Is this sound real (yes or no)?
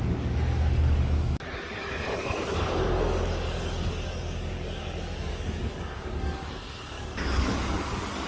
no